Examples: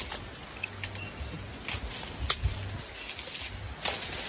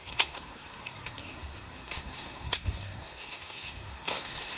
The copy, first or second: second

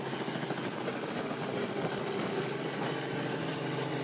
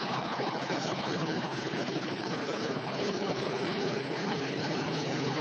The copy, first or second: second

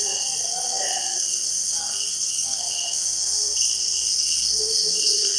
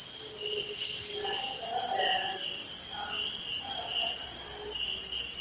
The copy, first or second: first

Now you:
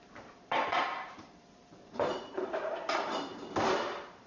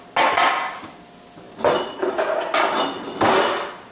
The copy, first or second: first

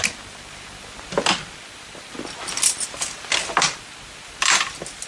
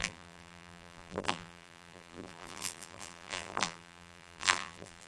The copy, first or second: second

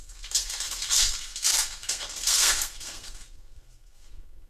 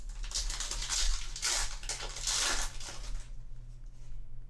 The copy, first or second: first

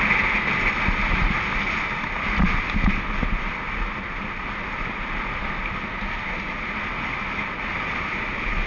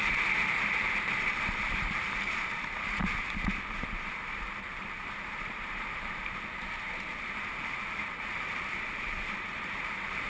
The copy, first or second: second